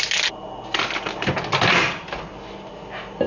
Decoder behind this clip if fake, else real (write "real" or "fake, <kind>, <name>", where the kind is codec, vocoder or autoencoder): real